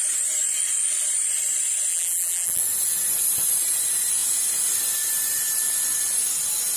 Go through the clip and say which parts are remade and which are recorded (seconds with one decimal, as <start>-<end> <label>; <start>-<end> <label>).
0.0-1.9 recorded; 1.9-2.6 remade; 2.6-6.8 recorded